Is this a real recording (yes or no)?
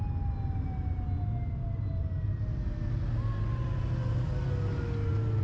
yes